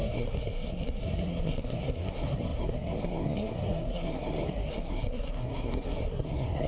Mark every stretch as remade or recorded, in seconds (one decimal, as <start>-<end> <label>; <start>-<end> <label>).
0.0-6.7 remade